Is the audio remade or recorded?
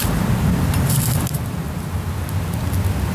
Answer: recorded